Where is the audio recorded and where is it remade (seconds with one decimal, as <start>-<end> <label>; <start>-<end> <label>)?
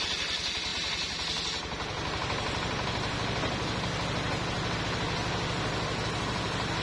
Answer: 0.0-6.8 recorded